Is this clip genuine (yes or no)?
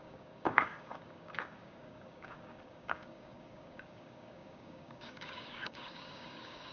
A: no